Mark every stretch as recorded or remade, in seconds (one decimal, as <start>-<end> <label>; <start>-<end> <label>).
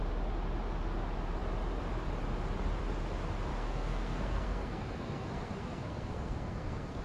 0.0-3.5 recorded; 3.5-7.0 remade